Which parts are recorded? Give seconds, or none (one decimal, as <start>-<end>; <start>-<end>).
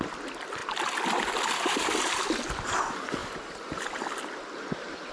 0.0-5.1